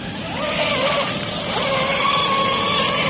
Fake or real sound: real